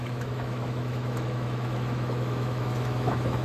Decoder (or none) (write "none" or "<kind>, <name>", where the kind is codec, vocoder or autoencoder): autoencoder, DAC-VAE